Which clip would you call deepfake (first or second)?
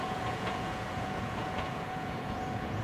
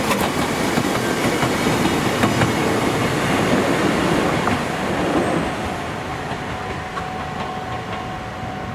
first